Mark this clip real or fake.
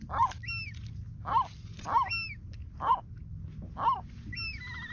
real